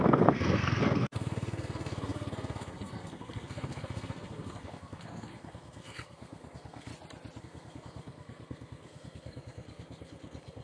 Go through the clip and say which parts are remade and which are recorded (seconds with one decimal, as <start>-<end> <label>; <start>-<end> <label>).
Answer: 0.0-6.9 remade; 6.9-7.4 recorded; 7.4-10.6 remade